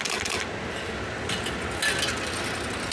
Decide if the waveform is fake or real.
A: real